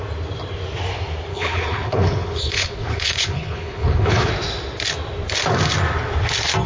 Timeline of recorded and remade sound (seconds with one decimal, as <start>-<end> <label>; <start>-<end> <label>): 0.0-1.3 recorded; 1.3-4.3 remade; 4.3-6.7 recorded